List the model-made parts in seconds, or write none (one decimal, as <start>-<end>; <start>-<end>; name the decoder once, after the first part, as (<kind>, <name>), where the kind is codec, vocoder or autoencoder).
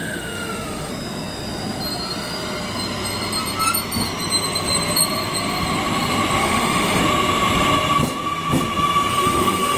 0.0-0.9 (autoencoder, DAC-VAE); 6.4-7.0; 9.1-9.8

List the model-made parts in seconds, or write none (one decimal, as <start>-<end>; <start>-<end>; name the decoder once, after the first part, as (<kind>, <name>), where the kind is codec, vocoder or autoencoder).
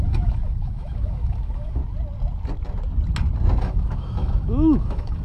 0.0-1.8 (autoencoder, DAC-VAE); 3.6-5.2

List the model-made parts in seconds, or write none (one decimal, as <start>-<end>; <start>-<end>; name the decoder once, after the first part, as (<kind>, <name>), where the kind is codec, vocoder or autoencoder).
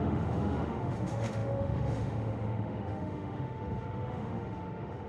0.0-5.1 (autoencoder, DAC-VAE)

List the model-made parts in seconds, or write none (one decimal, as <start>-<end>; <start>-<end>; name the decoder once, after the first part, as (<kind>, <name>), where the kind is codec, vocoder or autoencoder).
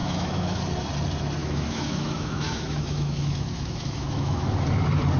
0.0-0.6 (autoencoder, DAC-VAE); 1.4-4.5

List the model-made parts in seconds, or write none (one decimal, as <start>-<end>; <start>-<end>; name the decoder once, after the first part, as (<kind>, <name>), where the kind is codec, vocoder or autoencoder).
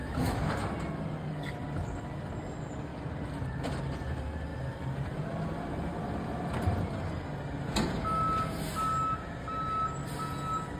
0.0-0.5 (autoencoder, DAC-VAE)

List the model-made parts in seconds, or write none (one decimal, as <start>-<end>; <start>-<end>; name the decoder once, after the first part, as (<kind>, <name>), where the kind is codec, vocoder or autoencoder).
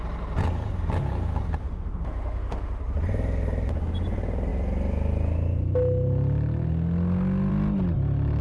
1.6-2.8 (autoencoder, DAC-VAE)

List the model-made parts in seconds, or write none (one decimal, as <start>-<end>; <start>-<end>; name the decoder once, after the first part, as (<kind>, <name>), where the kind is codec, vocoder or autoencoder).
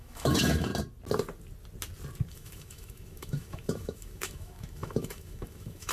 0.0-0.7 (autoencoder, DAC-VAE); 2.3-5.9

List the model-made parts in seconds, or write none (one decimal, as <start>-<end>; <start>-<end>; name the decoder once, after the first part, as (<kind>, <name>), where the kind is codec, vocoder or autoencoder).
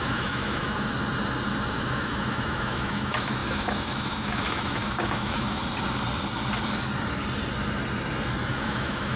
0.0-0.9 (autoencoder, DAC-VAE); 1.7-5.6; 8.5-9.2